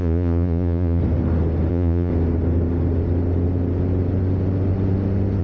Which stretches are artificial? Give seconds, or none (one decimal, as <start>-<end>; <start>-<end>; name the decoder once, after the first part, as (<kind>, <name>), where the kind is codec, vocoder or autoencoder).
0.0-1.0 (vocoder, Vocos); 1.7-2.1